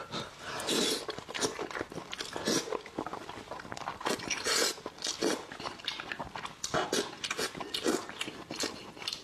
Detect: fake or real real